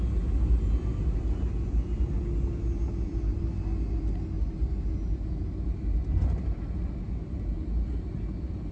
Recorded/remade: recorded